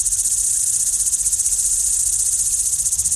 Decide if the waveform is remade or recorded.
recorded